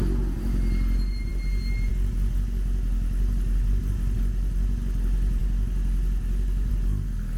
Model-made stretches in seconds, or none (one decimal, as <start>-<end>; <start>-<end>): none